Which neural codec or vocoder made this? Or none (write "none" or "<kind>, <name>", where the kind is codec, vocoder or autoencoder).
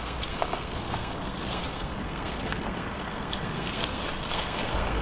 codec, SNAC